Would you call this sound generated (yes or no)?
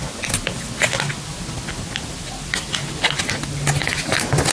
no